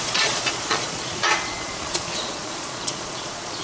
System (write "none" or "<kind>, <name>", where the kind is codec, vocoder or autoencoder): vocoder, Vocos